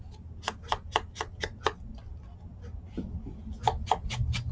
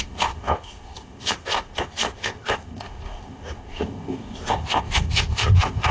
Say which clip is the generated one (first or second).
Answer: second